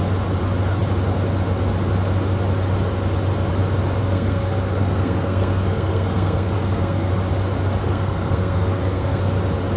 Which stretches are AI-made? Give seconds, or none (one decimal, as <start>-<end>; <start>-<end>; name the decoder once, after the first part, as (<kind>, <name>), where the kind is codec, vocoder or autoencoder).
4.0-7.1 (codec, SNAC); 7.8-9.2